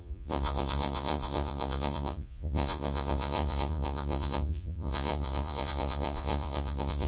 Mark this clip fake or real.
fake